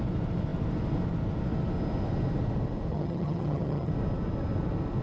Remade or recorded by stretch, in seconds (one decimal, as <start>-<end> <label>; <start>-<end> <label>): 0.0-2.9 recorded; 2.9-3.9 remade; 3.9-5.0 recorded